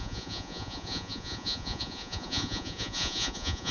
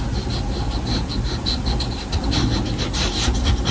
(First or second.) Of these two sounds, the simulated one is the first